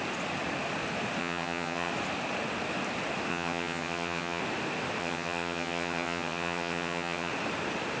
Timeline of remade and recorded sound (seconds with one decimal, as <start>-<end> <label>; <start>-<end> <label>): 0.0-1.2 recorded; 1.2-1.9 remade; 1.9-3.3 recorded; 3.3-4.4 remade; 4.4-5.0 recorded; 5.0-7.3 remade; 7.3-8.0 recorded